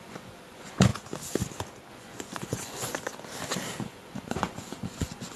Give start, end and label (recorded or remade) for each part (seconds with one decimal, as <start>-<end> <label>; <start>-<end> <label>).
0.0-0.9 remade; 0.9-1.9 recorded; 1.9-2.9 remade; 2.9-3.8 recorded; 3.8-5.4 remade